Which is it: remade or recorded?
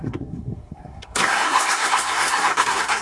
remade